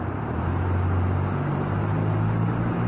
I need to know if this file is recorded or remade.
recorded